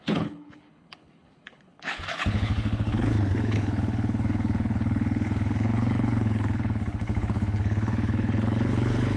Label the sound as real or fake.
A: fake